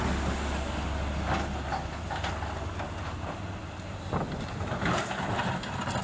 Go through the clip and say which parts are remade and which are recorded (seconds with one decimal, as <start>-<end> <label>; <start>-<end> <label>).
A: 0.0-1.7 recorded; 1.7-2.3 remade; 2.3-3.1 recorded; 3.1-5.5 remade; 5.5-6.0 recorded